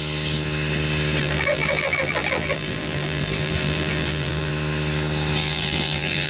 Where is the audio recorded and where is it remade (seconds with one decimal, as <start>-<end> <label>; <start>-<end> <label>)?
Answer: 0.0-1.2 recorded; 1.2-4.5 remade; 4.5-5.4 recorded; 5.4-6.3 remade